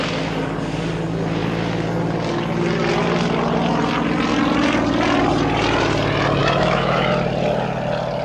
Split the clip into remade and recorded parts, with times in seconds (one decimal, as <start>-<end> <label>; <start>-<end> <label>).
0.0-6.4 recorded; 6.4-7.1 remade; 7.1-8.2 recorded